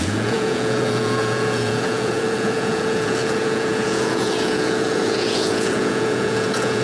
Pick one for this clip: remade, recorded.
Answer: remade